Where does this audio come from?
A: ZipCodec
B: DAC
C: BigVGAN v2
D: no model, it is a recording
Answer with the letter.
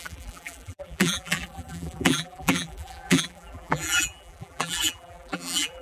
C